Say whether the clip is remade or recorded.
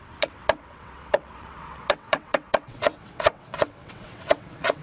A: remade